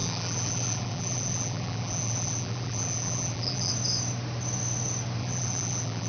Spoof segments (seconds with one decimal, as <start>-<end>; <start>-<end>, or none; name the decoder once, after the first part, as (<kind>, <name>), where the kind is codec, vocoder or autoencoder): 0.0-3.7 (vocoder, BigVGAN v2); 5.2-6.1